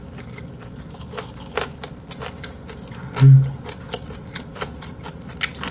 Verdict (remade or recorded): recorded